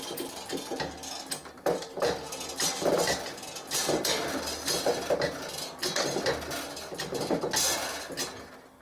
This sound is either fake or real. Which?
real